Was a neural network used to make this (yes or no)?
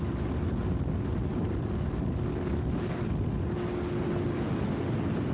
no